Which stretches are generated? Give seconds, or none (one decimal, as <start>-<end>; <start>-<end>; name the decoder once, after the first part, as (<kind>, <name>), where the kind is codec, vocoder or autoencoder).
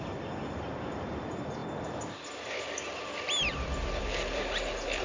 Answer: 0.0-1.6 (vocoder, BigVGAN v2); 3.5-5.0